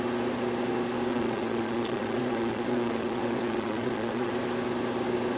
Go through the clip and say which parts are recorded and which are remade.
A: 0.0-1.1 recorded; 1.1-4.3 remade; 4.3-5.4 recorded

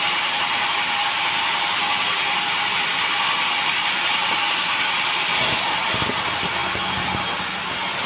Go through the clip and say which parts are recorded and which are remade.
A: 0.0-8.1 recorded